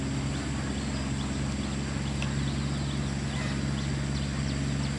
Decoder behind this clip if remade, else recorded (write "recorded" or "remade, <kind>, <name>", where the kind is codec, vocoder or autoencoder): recorded